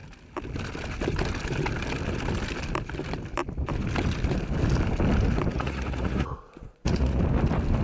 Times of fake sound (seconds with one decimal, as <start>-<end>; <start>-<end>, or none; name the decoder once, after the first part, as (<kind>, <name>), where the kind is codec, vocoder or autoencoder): 5.5-7.2 (vocoder, Vocos)